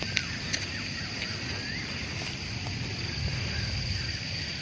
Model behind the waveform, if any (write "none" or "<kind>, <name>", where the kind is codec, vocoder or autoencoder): none